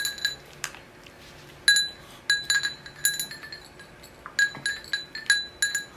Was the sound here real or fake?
real